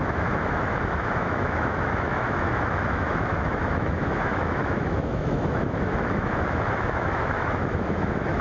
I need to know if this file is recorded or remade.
remade